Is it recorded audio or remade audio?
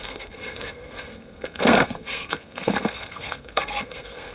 remade